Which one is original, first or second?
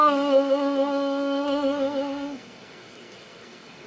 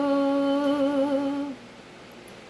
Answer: second